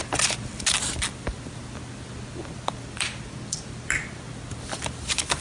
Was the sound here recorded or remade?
recorded